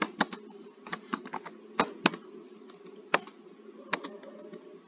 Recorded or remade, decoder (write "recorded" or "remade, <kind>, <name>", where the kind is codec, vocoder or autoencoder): recorded